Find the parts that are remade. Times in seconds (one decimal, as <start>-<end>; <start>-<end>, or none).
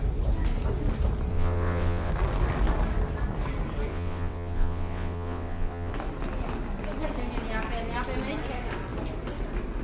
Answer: 1.3-2.1; 3.9-5.9